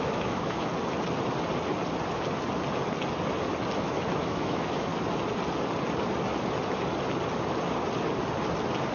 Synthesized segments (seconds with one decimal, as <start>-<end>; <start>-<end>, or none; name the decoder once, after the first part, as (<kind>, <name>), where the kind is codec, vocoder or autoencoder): 0.0-0.7 (autoencoder, DAC-VAE); 3.8-4.9